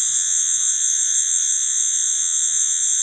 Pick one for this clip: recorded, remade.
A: remade